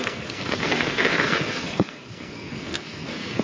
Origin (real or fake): fake